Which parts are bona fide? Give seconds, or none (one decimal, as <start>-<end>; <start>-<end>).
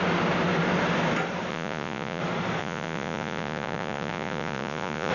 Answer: 0.0-1.5; 2.2-2.6